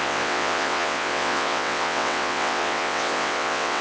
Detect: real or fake fake